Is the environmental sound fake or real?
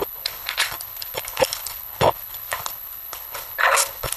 fake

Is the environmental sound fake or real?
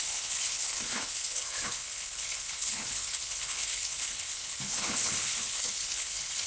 fake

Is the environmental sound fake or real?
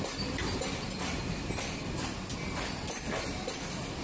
real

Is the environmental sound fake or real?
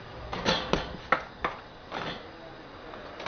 real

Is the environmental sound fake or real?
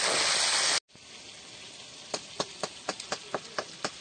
real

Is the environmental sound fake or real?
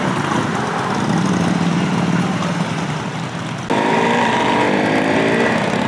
real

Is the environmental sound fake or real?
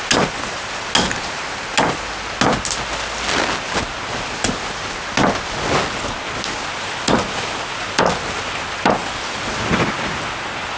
real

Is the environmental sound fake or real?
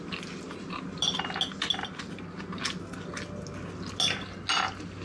real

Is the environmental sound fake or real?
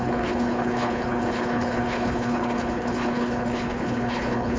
fake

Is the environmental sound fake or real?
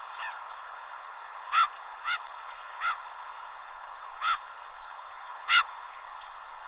fake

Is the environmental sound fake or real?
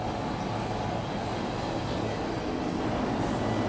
real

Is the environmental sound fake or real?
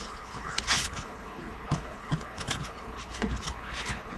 fake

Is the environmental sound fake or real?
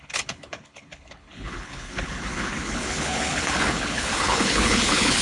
fake